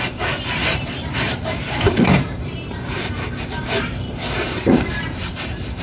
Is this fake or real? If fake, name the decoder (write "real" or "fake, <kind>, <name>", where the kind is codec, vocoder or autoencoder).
fake, vocoder, BigVGAN v2